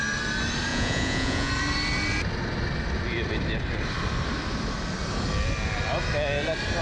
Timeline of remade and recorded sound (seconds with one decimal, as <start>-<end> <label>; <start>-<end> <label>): 0.0-0.7 recorded; 0.7-1.5 remade; 1.5-6.8 recorded